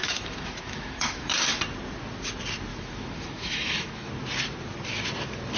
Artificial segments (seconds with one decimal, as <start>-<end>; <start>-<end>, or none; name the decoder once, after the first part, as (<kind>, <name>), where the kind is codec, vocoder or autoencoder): 0.0-1.6 (autoencoder, DAC-VAE); 2.7-4.1